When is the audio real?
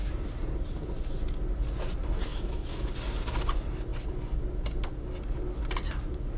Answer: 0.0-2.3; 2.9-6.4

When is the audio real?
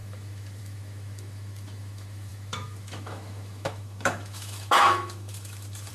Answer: none